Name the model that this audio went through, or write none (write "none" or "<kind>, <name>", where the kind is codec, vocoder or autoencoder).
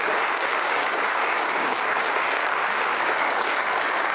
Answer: codec, DAC